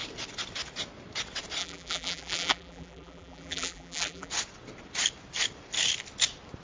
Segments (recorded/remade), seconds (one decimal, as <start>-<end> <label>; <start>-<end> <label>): 0.0-1.6 recorded; 1.6-4.3 remade; 4.3-6.6 recorded